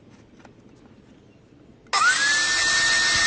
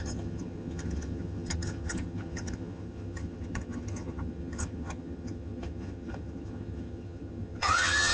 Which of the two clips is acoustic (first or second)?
first